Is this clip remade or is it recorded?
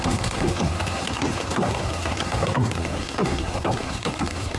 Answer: remade